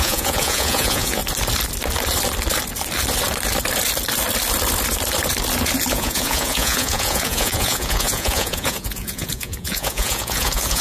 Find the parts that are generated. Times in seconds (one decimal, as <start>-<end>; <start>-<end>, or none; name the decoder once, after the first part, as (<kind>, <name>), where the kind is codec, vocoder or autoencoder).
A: 0.0-1.2 (vocoder, Vocos); 5.9-10.8